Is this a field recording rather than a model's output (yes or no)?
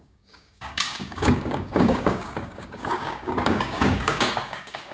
no